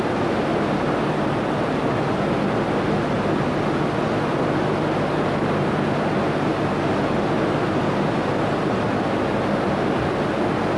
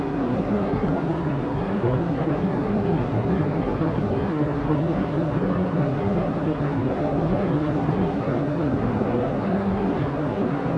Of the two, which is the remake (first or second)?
second